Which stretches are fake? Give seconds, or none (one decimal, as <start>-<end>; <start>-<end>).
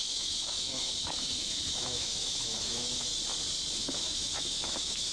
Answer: 0.0-3.1; 3.8-5.1